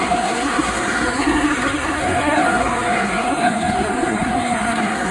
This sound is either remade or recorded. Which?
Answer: remade